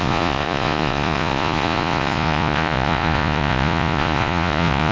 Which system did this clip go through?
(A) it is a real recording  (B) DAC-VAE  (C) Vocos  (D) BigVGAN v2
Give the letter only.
C